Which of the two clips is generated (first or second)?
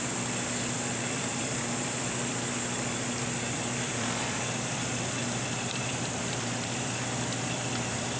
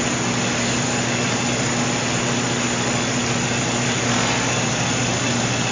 first